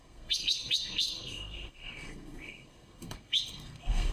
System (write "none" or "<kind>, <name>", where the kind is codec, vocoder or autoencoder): codec, SNAC